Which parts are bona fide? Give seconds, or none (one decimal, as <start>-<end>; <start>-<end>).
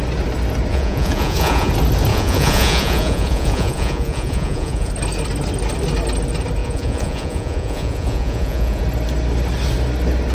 0.0-0.7; 1.7-2.1; 4.9-6.6; 8.8-10.3